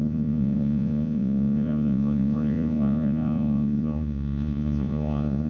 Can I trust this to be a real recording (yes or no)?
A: no